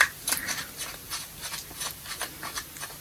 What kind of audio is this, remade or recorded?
recorded